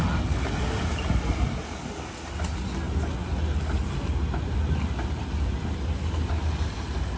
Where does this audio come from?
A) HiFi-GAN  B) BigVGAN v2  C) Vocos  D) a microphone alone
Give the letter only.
D